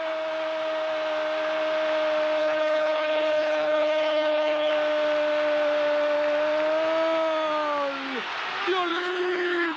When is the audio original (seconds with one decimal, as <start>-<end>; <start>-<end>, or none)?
0.0-2.4; 4.7-8.9